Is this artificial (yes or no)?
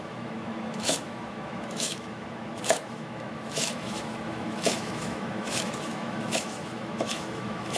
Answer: yes